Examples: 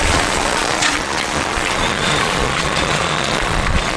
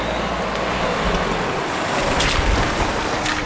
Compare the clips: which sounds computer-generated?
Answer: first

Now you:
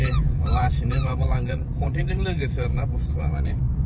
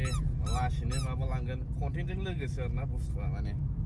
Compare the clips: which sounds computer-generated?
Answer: first